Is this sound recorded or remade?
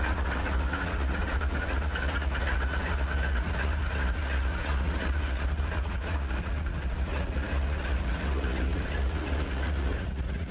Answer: remade